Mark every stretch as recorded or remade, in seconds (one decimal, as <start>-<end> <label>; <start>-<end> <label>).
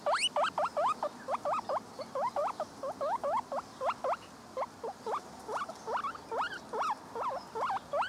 0.0-8.1 recorded